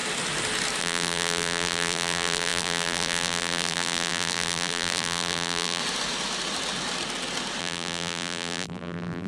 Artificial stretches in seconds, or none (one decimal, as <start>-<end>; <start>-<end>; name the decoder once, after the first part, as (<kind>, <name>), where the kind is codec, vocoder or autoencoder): 0.8-5.8 (vocoder, BigVGAN v2); 7.6-9.3